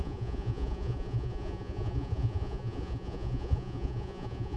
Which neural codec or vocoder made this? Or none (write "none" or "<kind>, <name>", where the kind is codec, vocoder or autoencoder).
vocoder, Vocos